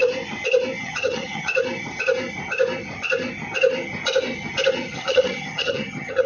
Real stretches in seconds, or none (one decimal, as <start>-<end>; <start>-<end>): 0.0-0.8; 1.5-4.9